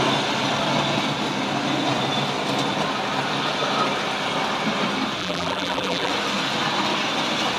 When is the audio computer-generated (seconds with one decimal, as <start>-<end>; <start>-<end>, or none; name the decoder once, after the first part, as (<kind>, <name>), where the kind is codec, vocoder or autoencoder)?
5.2-6.1 (vocoder, BigVGAN v2)